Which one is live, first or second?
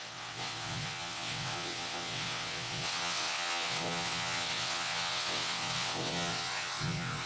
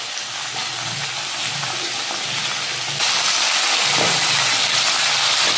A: second